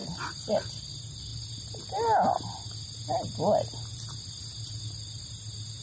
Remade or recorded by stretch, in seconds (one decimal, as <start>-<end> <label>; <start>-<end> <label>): 0.0-5.8 recorded